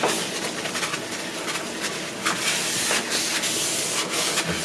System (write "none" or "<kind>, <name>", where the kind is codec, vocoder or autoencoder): none